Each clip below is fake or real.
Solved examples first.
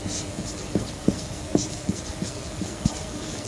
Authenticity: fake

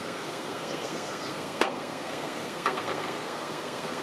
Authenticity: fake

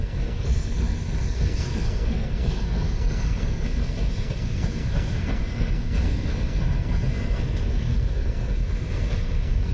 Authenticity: fake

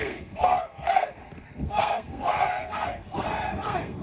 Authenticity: fake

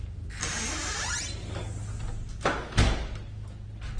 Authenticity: real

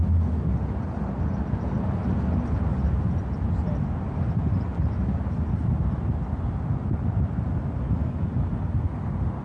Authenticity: real